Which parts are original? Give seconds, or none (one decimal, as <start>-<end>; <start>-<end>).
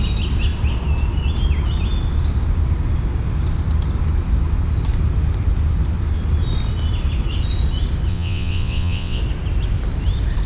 0.0-8.1; 9.2-10.5